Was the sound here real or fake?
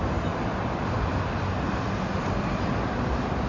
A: fake